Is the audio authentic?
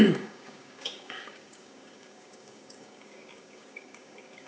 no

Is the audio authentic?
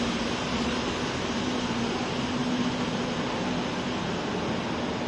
yes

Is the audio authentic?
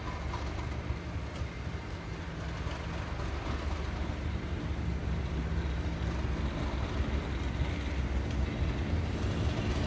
yes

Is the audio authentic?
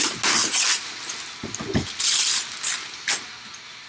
yes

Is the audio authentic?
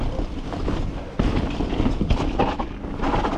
yes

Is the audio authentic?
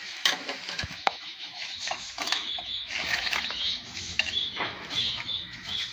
no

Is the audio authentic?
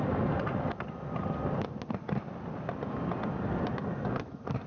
yes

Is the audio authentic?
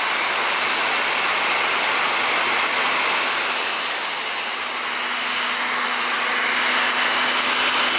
yes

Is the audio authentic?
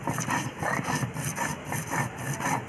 yes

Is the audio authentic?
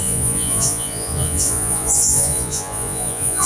no